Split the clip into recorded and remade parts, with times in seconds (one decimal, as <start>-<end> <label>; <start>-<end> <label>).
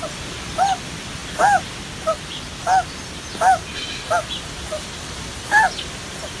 0.0-3.8 remade; 3.8-4.3 recorded; 4.3-6.4 remade